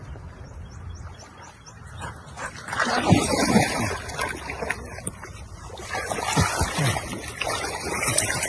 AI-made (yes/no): no